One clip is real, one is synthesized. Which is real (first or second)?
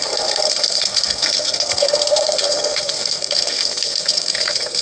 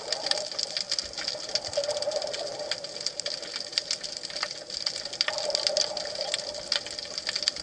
second